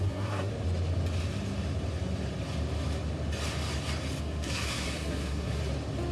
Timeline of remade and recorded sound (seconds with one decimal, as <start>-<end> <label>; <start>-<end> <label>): 0.0-0.5 remade; 0.5-4.2 recorded; 4.2-5.6 remade; 5.6-6.1 recorded